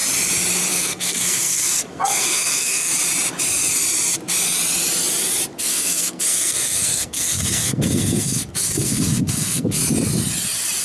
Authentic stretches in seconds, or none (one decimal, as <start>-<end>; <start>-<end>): 0.0-0.7; 2.9-5.6; 9.8-10.8